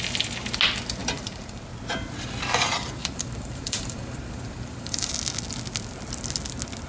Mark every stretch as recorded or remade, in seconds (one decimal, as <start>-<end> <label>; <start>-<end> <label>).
0.0-1.0 recorded; 1.0-1.6 remade; 1.6-3.0 recorded; 3.0-5.1 remade; 5.1-6.9 recorded